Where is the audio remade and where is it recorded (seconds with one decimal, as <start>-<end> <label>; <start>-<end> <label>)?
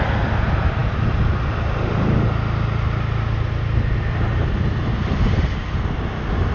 0.0-6.5 recorded